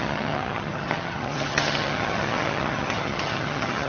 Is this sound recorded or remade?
remade